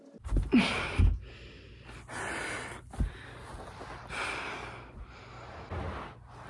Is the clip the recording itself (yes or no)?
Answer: yes